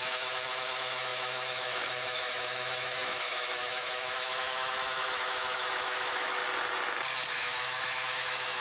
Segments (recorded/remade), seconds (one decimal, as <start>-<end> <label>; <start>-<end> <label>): 0.0-6.4 remade; 6.4-7.3 recorded; 7.3-8.6 remade